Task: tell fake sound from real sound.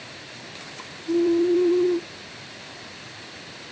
fake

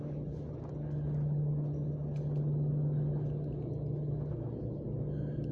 real